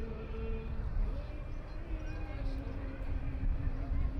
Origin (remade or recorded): recorded